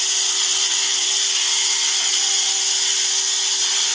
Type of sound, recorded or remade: recorded